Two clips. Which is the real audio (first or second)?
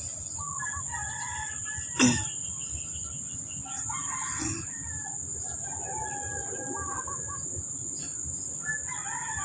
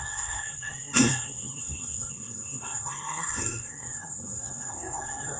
first